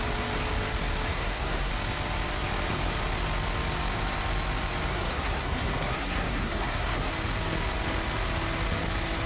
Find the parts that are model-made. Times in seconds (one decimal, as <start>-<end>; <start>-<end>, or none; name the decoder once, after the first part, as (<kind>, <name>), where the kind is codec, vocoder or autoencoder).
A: 1.1-1.7 (codec, SNAC); 4.9-7.1